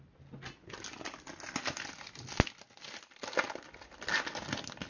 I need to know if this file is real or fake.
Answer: real